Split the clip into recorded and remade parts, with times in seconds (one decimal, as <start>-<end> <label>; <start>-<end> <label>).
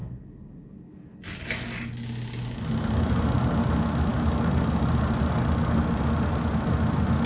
0.0-7.3 recorded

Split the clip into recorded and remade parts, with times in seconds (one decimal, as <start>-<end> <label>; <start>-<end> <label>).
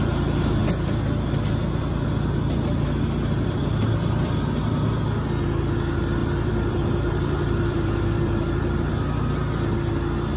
0.0-6.2 recorded; 6.2-8.9 remade; 8.9-10.4 recorded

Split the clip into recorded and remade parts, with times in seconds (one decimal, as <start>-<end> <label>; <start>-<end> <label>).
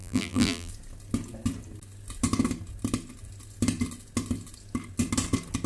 0.0-0.7 remade; 0.7-5.7 recorded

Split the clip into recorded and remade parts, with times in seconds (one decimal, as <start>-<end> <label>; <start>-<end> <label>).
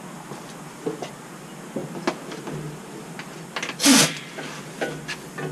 0.0-5.5 recorded